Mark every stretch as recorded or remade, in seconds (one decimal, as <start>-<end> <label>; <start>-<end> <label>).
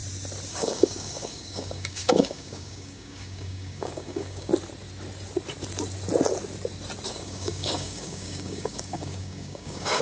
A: 0.0-0.5 recorded; 0.5-4.5 remade; 4.5-7.1 recorded; 7.1-10.0 remade